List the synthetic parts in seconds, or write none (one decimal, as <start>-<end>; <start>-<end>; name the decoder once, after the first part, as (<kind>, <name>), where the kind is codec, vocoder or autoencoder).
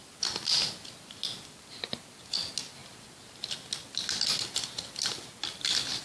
none